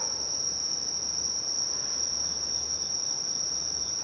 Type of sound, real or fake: real